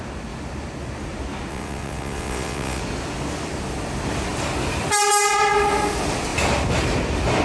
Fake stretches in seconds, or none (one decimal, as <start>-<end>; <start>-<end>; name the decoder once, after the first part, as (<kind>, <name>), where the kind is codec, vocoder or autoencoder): 1.5-2.8 (vocoder, WaveNeXt)